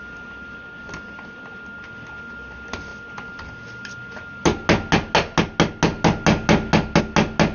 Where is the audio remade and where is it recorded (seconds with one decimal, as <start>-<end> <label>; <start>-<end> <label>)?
0.0-7.5 recorded